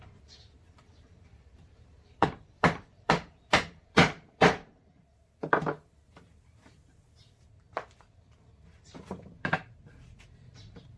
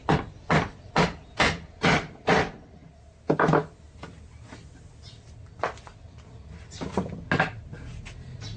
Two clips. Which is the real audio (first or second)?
second